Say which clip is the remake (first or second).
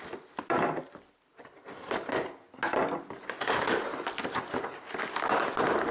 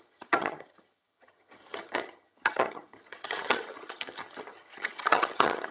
second